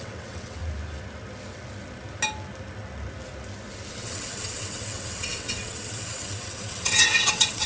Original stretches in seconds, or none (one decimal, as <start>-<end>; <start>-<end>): 0.6-3.9